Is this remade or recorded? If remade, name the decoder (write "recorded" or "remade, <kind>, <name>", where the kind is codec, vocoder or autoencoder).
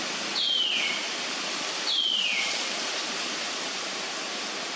recorded